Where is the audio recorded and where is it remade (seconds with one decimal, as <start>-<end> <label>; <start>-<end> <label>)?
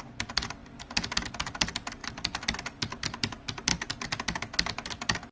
0.0-5.3 recorded